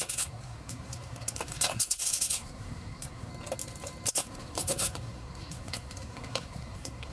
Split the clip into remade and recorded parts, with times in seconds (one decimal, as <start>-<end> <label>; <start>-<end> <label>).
0.0-3.3 remade; 3.3-4.1 recorded; 4.1-7.1 remade